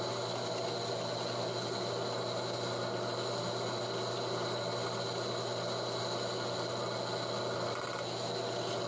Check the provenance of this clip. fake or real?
real